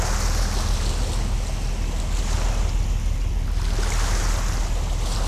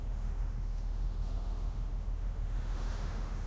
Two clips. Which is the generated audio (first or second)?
second